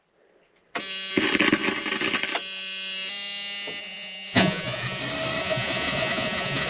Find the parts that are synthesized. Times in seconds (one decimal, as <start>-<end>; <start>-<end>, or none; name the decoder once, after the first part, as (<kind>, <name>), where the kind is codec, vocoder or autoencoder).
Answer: 3.8-5.0 (vocoder, Vocos); 5.4-6.7